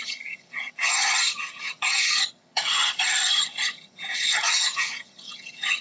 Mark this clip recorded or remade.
remade